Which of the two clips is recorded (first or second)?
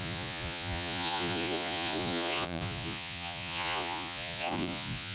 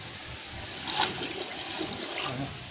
second